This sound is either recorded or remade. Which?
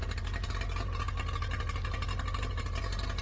recorded